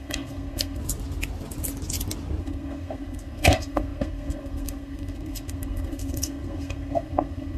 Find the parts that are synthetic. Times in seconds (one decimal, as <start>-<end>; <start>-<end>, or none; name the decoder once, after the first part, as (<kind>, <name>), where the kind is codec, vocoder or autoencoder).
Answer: 0.0-0.8 (codec, SNAC); 2.4-7.6